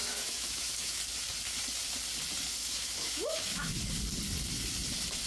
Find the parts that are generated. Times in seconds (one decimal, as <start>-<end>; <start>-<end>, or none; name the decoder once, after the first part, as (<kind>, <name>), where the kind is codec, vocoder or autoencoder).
0.0-1.0 (autoencoder, DAC-VAE); 2.6-3.7